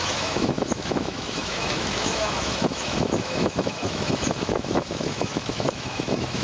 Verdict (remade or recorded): remade